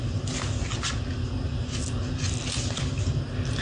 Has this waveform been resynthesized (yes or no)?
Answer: no